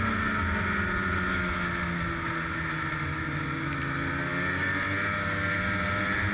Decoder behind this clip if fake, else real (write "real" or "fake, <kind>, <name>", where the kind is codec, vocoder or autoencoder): real